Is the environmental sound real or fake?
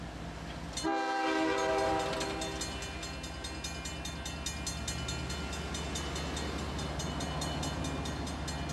real